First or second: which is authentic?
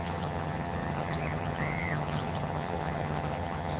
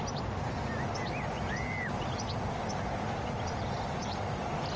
second